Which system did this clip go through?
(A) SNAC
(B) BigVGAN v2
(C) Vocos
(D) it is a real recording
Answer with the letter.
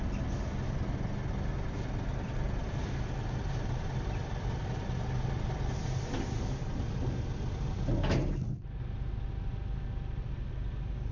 D